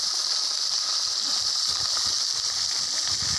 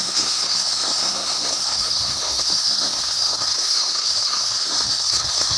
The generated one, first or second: second